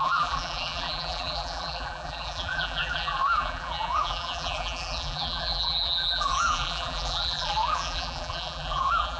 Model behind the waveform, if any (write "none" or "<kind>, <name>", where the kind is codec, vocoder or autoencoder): vocoder, BigVGAN v2